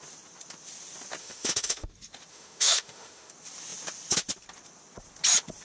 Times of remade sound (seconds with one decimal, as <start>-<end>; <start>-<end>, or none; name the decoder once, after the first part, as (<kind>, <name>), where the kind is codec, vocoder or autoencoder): 1.2-1.9 (autoencoder, DAC-VAE); 2.3-3.3

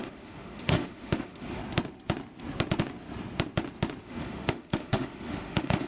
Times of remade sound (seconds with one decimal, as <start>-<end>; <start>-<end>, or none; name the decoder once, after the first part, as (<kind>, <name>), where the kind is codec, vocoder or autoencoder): 0.0-1.6 (autoencoder, DAC-VAE); 4.0-5.9

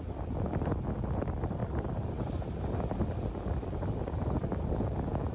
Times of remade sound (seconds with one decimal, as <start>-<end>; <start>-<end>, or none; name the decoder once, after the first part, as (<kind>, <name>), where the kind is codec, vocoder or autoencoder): none